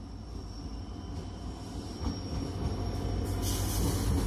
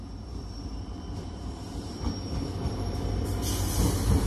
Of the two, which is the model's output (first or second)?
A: second